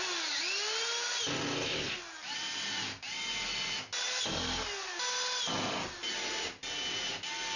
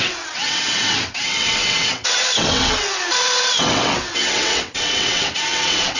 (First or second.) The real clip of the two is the first